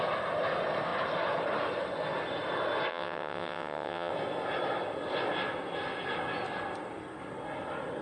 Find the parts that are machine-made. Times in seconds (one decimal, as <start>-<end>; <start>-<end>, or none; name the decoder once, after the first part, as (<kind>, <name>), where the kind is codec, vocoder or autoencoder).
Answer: 2.9-4.1 (vocoder, WaveNeXt)